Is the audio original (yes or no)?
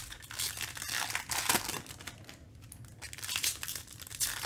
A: yes